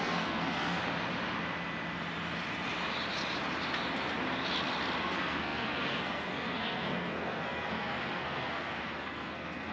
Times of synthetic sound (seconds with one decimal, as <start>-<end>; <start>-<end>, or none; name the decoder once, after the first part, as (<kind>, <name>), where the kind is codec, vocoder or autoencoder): 0.0-0.8 (codec, SNAC); 5.0-9.7